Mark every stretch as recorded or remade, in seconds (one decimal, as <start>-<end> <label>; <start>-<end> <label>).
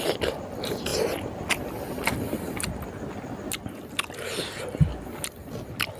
0.0-6.0 recorded